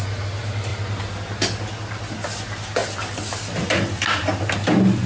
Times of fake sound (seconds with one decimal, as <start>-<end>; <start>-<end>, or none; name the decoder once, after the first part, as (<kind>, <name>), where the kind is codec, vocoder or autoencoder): none